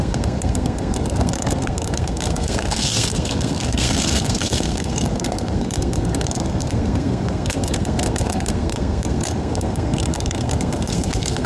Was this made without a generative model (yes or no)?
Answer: no